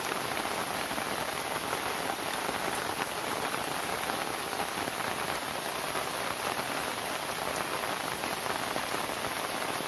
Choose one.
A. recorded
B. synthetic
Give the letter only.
A